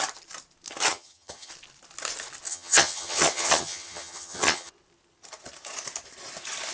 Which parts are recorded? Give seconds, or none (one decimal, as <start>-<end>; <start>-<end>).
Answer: 0.0-0.9; 1.5-2.5; 4.7-6.7